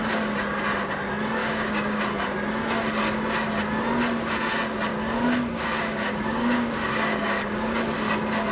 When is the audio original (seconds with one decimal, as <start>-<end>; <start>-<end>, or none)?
0.0-1.4; 2.0-4.9; 7.7-8.5